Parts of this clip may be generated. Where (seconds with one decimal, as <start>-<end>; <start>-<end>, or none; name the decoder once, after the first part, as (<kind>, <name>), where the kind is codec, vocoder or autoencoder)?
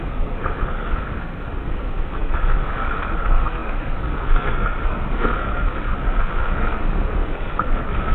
0.0-8.1 (codec, SNAC)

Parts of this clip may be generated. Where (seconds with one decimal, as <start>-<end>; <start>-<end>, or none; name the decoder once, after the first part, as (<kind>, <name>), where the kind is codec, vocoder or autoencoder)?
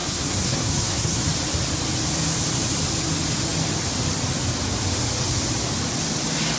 0.0-1.2 (codec, SNAC)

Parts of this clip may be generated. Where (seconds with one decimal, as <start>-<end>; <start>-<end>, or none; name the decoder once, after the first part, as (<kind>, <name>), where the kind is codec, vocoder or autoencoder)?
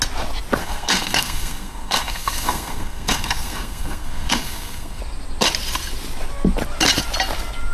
0.6-5.0 (codec, SNAC)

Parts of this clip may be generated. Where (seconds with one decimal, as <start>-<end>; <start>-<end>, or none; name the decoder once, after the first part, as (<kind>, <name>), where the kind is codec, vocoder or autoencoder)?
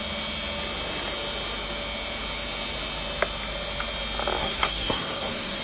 4.4-5.6 (codec, SNAC)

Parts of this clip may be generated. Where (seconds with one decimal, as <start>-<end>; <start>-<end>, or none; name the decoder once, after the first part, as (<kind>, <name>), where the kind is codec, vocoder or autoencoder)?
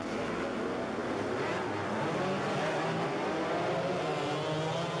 none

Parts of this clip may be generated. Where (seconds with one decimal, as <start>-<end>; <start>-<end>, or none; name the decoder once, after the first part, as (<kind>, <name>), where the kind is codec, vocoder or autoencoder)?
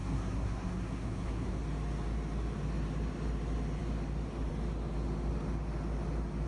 0.0-1.6 (codec, SNAC)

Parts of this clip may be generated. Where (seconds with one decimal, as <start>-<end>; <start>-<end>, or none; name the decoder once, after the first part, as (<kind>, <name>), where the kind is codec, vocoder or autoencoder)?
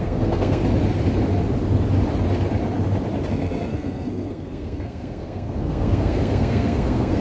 0.0-0.6 (codec, SNAC); 3.3-7.2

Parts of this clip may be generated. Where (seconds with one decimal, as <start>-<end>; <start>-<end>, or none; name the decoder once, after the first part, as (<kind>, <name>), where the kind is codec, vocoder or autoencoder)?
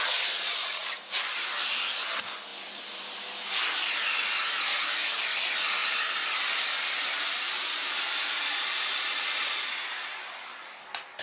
none